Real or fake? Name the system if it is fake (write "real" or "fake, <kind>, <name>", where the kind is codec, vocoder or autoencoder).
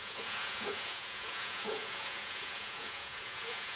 fake, vocoder, Vocos